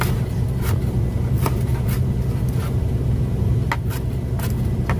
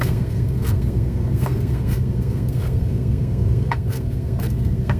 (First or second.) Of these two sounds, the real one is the first